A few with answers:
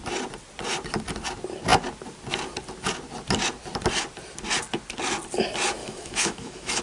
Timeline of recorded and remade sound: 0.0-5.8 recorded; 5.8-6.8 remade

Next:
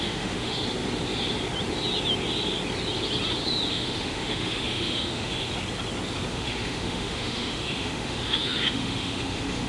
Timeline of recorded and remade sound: 0.0-0.6 remade; 0.6-3.7 recorded; 3.7-5.5 remade; 5.5-6.3 recorded; 6.3-9.7 remade

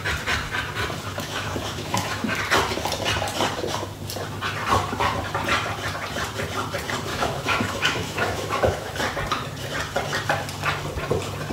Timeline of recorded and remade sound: 0.0-1.1 recorded; 1.1-2.3 remade; 2.3-7.1 recorded; 7.1-9.0 remade; 9.0-11.5 recorded

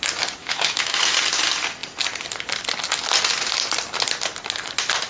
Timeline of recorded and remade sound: 0.0-0.4 recorded; 0.4-1.0 remade; 1.0-5.1 recorded

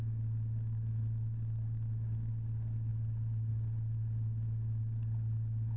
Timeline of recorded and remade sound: 0.0-2.3 remade; 2.3-5.8 recorded

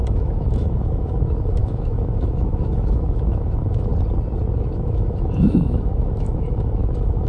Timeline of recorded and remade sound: 0.0-3.9 remade; 3.9-4.5 recorded; 4.5-7.3 remade